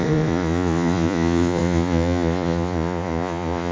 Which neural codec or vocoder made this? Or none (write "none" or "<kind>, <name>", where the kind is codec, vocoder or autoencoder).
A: vocoder, Vocos